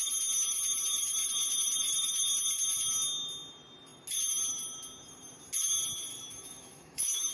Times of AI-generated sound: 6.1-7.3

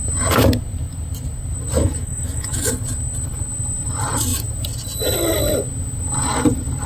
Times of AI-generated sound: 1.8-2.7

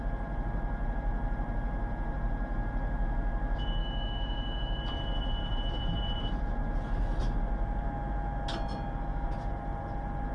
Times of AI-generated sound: 3.8-4.8

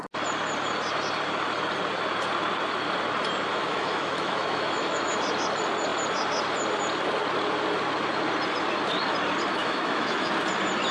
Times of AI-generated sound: 3.5-5.2; 9.6-10.3